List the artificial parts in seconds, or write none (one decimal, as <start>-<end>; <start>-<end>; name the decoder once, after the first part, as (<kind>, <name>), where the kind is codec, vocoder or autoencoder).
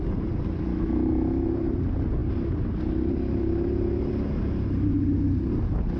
0.7-1.5 (autoencoder, DAC-VAE)